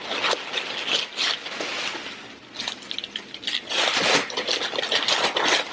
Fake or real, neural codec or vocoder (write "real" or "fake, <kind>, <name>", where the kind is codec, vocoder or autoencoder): real